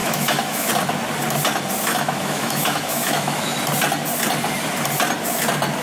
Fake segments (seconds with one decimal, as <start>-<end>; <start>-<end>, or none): 0.0-0.7; 1.9-3.6